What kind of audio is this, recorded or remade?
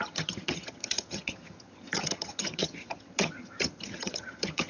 remade